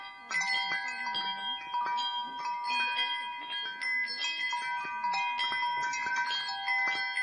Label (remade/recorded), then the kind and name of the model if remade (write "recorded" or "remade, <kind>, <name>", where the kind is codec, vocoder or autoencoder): recorded